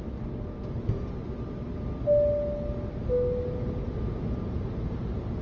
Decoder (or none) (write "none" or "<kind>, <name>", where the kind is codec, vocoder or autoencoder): none